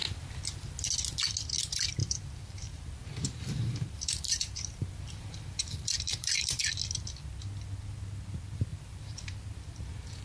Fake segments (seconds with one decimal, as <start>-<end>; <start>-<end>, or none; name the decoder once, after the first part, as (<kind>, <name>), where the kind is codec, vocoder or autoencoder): 2.0-6.6 (vocoder, BigVGAN v2); 8.7-9.3